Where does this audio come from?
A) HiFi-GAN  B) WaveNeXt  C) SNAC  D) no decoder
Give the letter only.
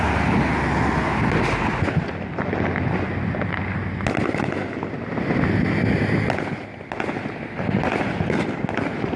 D